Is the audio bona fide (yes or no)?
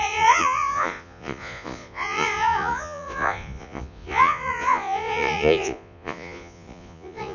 no